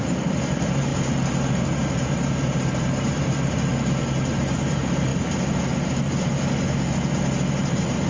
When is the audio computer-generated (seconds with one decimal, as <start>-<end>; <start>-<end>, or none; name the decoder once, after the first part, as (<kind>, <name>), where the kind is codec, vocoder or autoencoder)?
0.0-3.7 (vocoder, BigVGAN v2); 4.3-5.1; 7.5-8.1